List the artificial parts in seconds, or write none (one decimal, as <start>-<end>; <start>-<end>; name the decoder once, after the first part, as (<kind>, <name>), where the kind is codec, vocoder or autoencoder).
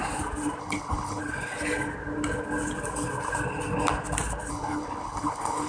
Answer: 0.6-1.2 (codec, HILCodec); 4.5-5.7